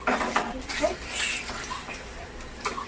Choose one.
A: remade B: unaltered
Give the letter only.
B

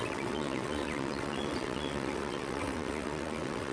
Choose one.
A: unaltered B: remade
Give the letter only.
B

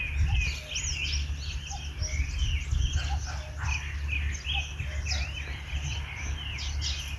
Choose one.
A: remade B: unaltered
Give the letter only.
B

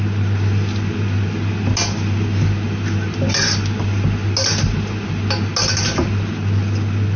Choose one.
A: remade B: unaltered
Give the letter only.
B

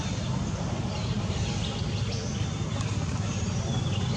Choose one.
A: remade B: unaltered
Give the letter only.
B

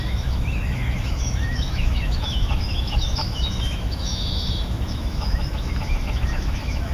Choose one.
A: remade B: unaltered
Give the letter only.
A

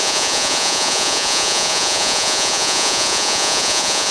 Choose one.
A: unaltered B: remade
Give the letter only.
B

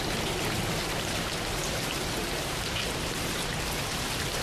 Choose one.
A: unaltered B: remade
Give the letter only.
A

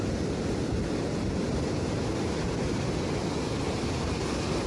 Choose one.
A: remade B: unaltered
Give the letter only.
B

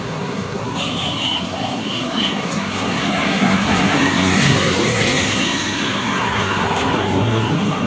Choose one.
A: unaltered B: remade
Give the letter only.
B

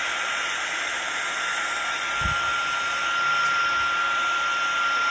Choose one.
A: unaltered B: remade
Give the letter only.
A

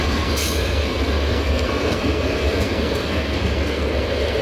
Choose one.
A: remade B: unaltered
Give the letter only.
A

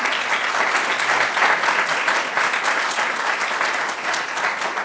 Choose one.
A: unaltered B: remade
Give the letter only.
A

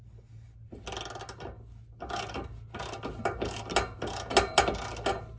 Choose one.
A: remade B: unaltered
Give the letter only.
B